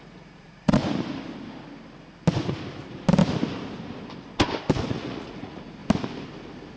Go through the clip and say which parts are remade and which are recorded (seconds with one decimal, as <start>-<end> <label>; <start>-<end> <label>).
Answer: 0.0-0.8 remade; 0.8-4.9 recorded; 4.9-5.8 remade; 5.8-6.8 recorded